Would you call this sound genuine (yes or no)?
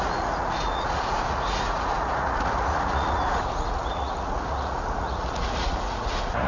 no